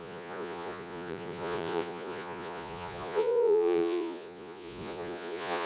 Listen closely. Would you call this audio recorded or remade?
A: remade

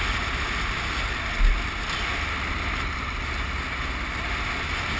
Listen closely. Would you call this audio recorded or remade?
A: recorded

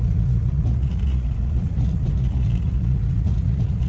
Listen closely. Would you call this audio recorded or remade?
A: remade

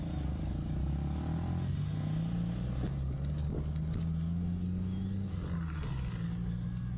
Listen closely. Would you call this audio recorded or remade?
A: recorded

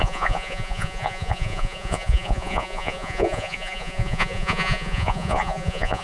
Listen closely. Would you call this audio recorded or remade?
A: remade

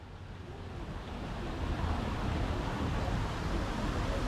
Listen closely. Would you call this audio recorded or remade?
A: recorded